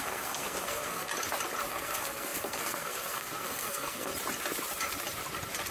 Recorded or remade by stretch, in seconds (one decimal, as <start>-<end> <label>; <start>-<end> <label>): 0.0-1.1 remade; 1.1-1.7 recorded; 1.7-4.1 remade; 4.1-5.7 recorded